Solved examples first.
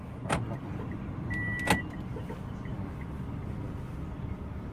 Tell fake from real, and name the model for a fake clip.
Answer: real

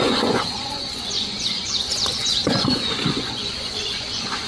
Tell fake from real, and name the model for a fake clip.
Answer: fake, vocoder, Vocos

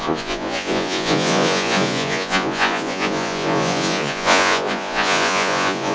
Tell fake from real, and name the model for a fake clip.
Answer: fake, vocoder, Vocos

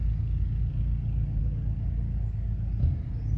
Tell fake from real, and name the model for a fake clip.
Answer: real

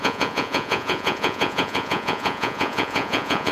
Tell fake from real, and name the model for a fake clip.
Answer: fake, vocoder, Vocos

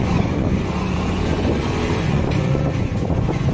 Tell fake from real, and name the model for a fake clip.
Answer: fake, vocoder, Vocos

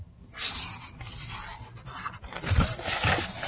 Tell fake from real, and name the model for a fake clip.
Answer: real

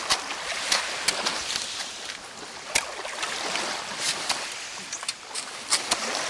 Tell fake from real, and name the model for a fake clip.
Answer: real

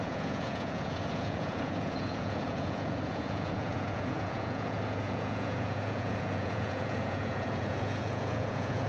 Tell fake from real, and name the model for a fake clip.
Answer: fake, vocoder, Vocos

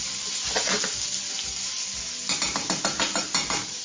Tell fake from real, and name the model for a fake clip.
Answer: real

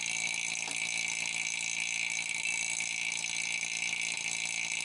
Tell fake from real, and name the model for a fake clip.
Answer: real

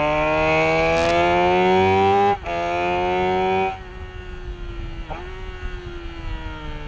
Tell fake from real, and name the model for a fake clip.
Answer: real